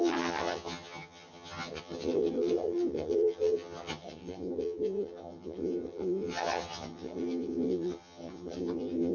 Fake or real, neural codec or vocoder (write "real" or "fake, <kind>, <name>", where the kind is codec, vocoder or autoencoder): fake, vocoder, HiFi-GAN